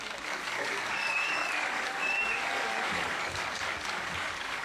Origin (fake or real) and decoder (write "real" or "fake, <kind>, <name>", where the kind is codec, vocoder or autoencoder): fake, codec, DAC